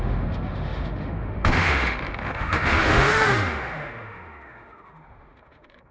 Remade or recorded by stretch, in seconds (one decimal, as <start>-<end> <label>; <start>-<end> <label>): 0.0-5.9 remade